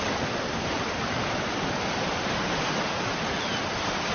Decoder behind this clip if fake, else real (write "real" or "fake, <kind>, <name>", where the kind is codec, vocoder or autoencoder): real